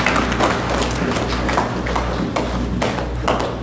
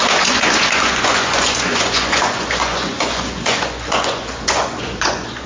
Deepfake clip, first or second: second